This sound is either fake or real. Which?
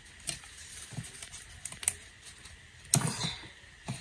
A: real